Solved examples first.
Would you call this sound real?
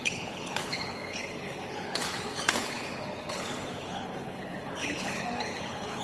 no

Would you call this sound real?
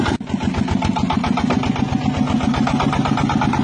yes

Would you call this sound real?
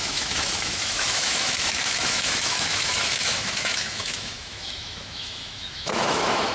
no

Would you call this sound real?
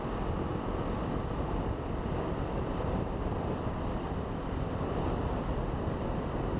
no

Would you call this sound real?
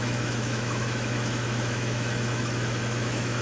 no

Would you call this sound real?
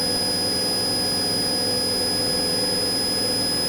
yes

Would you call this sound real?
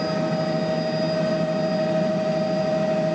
yes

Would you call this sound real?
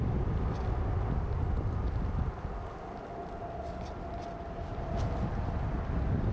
yes